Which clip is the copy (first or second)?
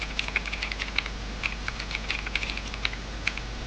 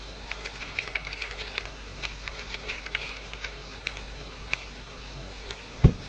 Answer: second